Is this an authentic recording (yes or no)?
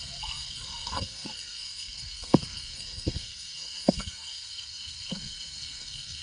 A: no